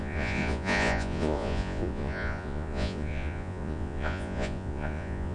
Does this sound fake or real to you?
fake